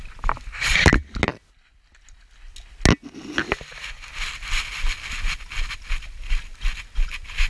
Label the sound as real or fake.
real